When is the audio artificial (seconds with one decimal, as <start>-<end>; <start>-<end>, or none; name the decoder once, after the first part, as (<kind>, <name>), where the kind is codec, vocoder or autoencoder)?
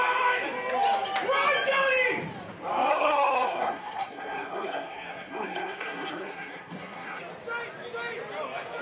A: 2.9-7.2 (codec, SNAC)